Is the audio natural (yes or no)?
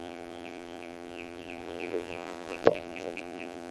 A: no